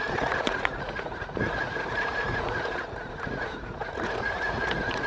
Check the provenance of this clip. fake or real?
fake